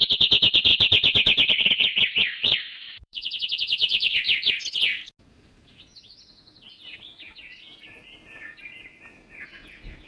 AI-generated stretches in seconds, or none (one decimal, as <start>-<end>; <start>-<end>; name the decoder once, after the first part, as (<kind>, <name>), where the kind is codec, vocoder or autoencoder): 0.7-4.5 (vocoder, BigVGAN v2)